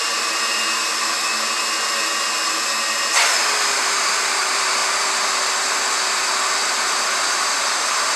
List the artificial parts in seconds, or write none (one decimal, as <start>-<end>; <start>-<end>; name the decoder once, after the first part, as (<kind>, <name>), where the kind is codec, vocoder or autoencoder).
0.0-0.9 (vocoder, BigVGAN v2); 2.9-4.8; 6.7-8.2